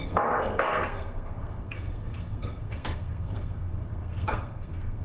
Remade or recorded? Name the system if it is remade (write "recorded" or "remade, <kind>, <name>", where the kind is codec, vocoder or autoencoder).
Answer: remade, codec, SNAC